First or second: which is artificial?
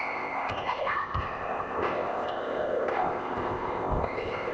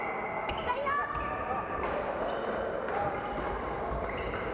first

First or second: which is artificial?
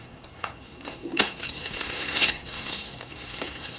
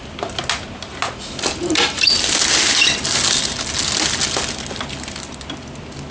first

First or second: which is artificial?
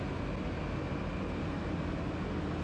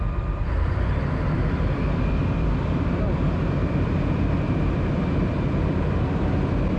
second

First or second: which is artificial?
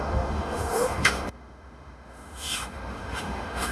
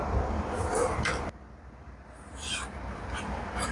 first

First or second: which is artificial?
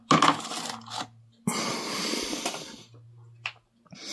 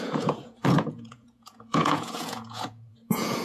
second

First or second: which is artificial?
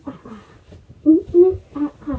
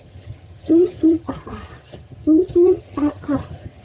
second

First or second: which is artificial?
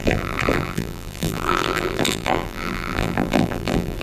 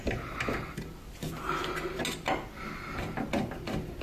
first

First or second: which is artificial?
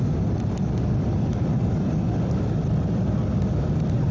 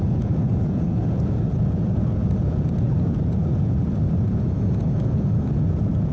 second